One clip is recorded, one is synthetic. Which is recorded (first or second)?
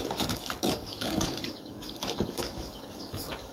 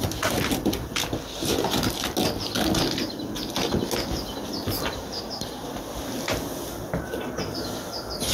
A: second